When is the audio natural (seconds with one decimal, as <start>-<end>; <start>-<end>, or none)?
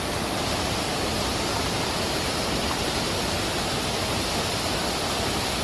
0.0-5.6